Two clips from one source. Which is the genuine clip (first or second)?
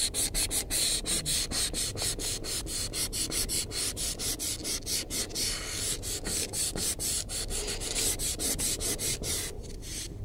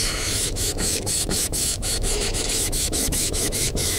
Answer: first